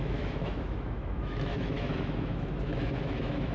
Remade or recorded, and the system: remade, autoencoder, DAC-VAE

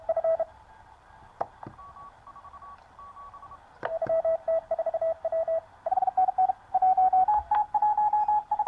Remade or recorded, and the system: recorded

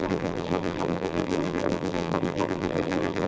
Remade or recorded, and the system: remade, vocoder, BigVGAN v2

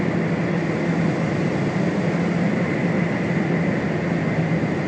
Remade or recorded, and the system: recorded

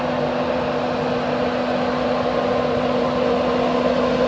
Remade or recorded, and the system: recorded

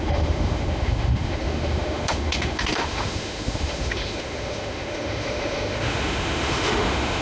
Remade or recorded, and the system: remade, autoencoder, DAC-VAE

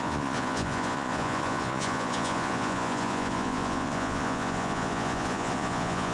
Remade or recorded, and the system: remade, vocoder, Vocos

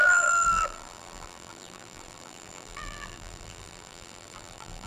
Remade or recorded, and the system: remade, vocoder, BigVGAN v2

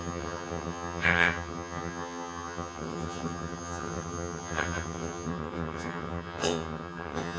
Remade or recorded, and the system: remade, vocoder, HiFi-GAN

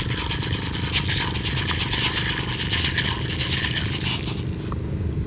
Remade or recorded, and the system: recorded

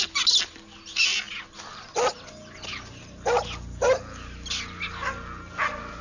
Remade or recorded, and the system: recorded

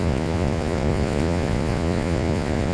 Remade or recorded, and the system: remade, vocoder, Vocos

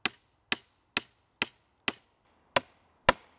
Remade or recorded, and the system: recorded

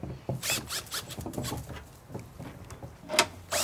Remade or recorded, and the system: recorded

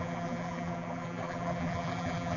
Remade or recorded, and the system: remade, vocoder, BigVGAN v2